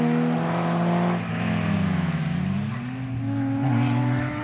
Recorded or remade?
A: recorded